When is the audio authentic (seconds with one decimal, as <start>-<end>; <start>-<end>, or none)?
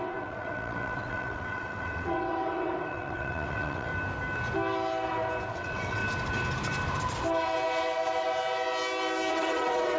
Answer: 3.9-5.5; 6.0-9.3